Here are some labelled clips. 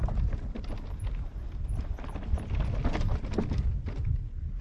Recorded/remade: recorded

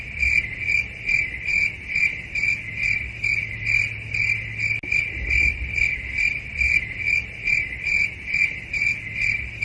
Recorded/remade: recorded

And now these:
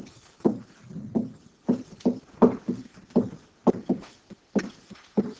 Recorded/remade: remade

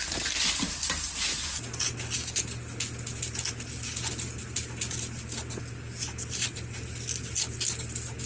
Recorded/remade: recorded